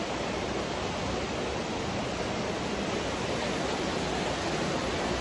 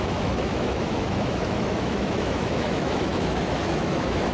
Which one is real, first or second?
first